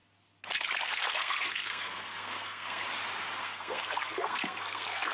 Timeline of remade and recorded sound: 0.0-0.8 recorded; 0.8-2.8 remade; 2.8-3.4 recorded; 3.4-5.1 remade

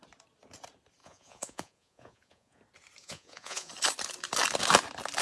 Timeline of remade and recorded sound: 0.0-1.0 recorded; 1.0-2.6 remade; 2.6-3.0 recorded; 3.0-3.7 remade; 3.7-5.2 recorded

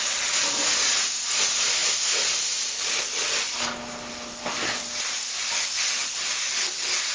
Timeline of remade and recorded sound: 0.0-7.1 recorded

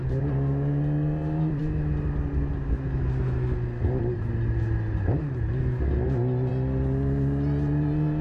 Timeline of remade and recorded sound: 0.0-8.2 recorded

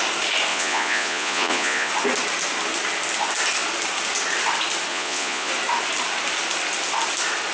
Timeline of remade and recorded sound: 0.0-0.5 recorded; 0.5-1.9 remade; 1.9-4.9 recorded; 4.9-5.5 remade; 5.5-7.5 recorded

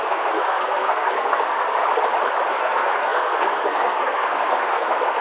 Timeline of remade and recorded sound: 0.0-1.8 remade; 1.8-2.5 recorded; 2.5-5.2 remade

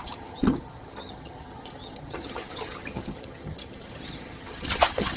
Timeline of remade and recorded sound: 0.0-5.2 remade